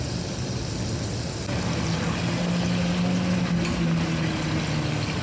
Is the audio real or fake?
real